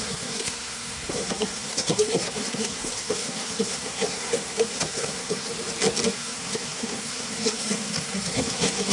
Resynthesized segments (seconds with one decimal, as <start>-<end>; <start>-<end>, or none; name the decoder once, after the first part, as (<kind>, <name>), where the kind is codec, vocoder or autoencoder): 0.0-5.5 (codec, SNAC); 6.1-8.9